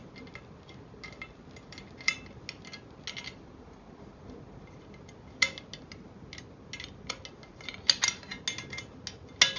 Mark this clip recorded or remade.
recorded